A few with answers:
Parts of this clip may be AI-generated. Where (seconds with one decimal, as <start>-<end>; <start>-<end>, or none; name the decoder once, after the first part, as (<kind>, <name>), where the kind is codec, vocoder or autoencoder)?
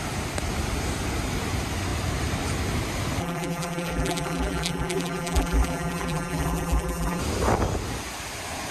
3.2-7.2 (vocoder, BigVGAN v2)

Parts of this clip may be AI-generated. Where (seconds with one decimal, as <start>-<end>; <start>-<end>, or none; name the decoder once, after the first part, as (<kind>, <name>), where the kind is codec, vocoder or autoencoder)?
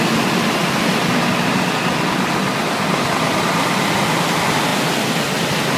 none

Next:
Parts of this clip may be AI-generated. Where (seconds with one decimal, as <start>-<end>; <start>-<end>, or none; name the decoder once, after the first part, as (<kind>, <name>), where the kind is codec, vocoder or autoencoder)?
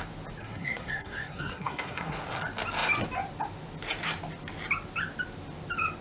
0.4-2.2 (codec, SNAC)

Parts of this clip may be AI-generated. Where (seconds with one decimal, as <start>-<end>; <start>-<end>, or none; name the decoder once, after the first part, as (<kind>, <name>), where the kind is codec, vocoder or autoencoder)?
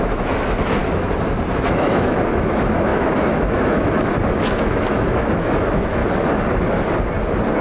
0.0-0.8 (autoencoder, DAC-VAE); 1.7-6.0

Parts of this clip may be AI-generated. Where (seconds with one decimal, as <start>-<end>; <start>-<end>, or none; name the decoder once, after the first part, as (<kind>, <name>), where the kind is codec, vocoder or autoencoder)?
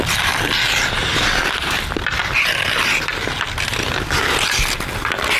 none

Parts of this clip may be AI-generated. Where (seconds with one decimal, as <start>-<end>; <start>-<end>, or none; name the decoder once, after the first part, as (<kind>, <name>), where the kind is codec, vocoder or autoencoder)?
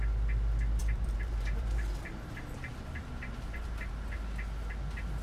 0.8-3.9 (vocoder, BigVGAN v2)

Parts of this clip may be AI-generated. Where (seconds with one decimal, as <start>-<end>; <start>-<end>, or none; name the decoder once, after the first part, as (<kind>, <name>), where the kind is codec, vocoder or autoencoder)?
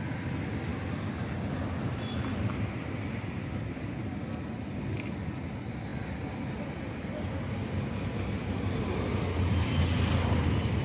none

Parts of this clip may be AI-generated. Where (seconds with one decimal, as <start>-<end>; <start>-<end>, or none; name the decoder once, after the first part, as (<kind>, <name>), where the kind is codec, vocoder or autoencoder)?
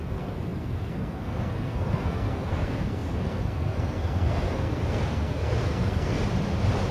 0.0-6.2 (codec, SNAC)